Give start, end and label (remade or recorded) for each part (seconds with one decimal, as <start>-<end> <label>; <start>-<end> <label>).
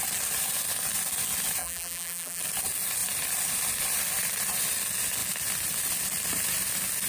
0.0-1.6 recorded; 1.6-2.4 remade; 2.4-7.1 recorded